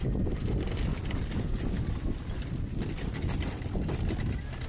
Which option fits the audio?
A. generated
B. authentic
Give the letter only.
B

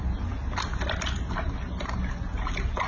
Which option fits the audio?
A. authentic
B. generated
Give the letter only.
A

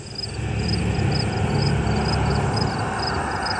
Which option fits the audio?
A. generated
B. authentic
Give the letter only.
B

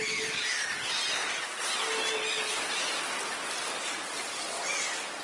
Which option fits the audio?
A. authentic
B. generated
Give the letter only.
A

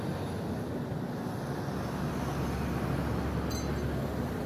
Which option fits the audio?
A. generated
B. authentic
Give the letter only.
B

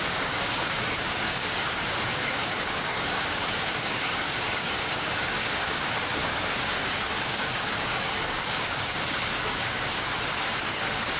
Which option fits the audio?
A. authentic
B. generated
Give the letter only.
B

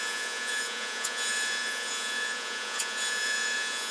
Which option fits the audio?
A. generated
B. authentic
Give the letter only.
A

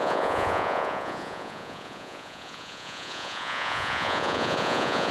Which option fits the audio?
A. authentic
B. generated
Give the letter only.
B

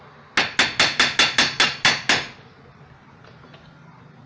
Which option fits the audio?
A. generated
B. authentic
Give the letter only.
B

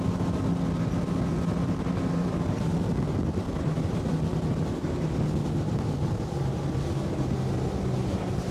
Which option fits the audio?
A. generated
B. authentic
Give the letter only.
B